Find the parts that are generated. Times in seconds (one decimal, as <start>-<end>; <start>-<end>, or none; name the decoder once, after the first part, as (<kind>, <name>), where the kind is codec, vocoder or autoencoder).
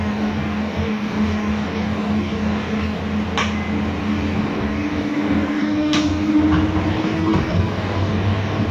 0.0-3.0 (codec, DAC); 4.0-6.4; 6.9-8.7